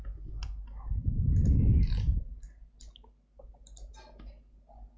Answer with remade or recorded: recorded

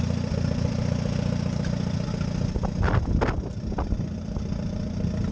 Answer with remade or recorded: recorded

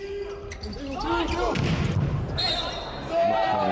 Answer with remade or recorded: recorded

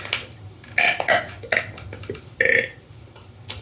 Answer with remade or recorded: recorded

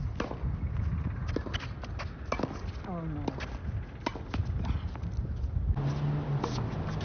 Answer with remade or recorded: recorded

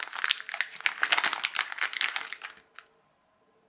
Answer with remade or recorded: recorded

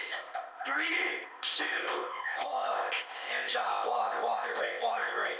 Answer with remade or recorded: remade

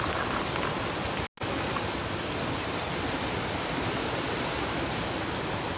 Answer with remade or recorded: recorded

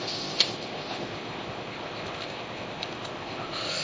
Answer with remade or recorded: remade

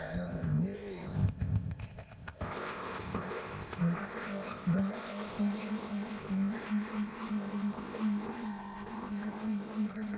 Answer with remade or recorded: remade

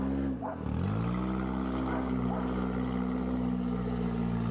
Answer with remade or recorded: recorded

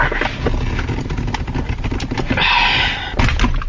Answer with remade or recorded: recorded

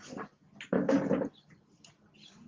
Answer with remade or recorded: recorded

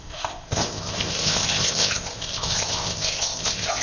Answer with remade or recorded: remade